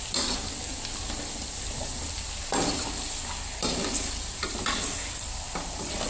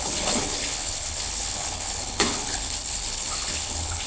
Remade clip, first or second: second